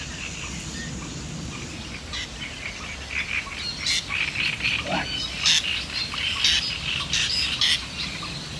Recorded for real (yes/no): yes